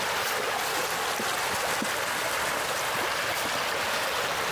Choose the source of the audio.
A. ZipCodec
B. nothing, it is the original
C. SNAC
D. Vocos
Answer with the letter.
B